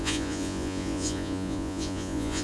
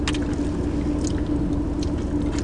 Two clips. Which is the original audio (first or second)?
second